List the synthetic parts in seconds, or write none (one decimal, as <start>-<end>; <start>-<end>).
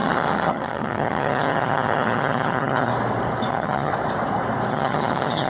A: 0.0-2.9; 3.5-3.9; 4.7-5.5